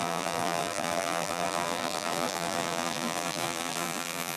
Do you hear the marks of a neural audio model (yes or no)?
yes